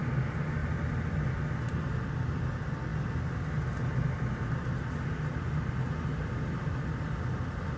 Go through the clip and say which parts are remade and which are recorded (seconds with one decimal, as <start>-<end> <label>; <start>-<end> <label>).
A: 0.0-7.8 recorded